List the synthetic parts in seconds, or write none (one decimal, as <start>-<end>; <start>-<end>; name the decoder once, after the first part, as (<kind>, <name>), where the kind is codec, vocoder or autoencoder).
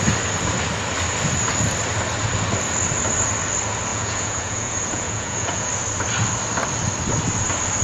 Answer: 3.9-5.7 (vocoder, Vocos)